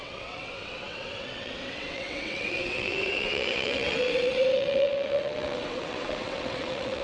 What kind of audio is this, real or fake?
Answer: fake